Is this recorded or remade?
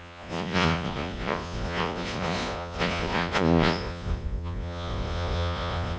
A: remade